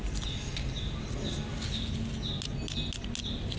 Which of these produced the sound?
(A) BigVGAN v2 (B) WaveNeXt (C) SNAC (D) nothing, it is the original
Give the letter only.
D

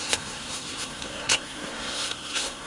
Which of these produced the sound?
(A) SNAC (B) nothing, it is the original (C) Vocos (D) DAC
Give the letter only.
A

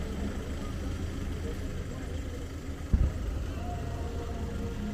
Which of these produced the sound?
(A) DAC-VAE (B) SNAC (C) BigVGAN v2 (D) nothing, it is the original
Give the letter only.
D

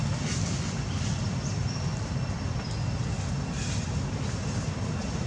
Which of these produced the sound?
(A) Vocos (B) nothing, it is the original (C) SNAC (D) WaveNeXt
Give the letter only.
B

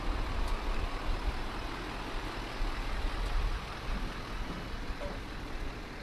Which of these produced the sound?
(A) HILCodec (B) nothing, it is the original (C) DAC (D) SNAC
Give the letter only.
B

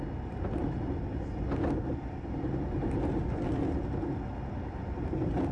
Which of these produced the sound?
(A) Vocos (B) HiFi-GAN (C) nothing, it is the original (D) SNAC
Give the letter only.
C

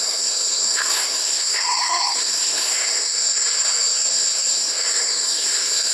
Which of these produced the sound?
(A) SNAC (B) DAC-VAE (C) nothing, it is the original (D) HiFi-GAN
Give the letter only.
A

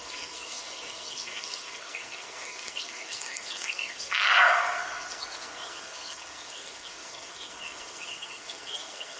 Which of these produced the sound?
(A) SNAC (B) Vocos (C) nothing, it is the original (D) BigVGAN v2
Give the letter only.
A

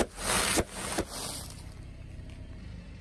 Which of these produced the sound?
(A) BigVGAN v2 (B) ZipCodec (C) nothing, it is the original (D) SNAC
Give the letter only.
C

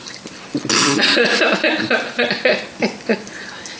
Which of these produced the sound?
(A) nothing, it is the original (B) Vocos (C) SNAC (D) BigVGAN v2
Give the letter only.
A